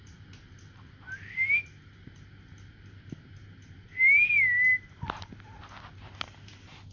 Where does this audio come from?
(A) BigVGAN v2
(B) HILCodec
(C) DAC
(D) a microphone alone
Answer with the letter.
D